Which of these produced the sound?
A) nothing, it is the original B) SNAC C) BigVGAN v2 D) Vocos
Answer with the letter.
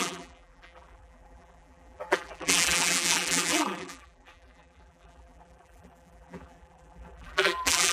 C